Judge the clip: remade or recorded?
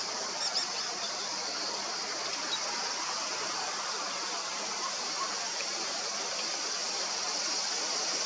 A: recorded